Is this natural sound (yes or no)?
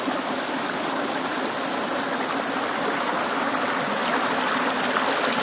yes